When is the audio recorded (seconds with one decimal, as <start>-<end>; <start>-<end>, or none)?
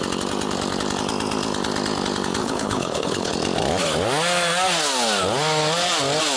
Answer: 0.0-2.4; 3.3-6.4